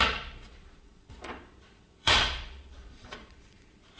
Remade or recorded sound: remade